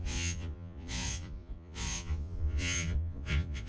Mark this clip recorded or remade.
remade